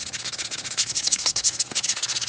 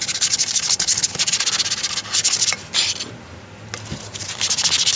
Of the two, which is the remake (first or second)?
first